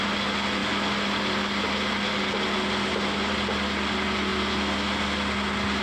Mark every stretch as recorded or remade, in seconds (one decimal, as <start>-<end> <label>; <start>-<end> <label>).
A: 0.0-0.6 recorded; 0.6-3.3 remade; 3.3-5.8 recorded